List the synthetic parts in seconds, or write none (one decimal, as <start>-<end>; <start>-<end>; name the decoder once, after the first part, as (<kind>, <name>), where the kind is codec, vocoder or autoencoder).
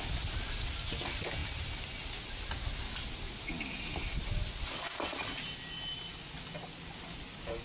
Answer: none